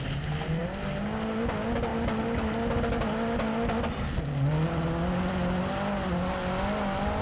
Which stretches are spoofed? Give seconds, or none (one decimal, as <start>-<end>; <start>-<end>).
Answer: none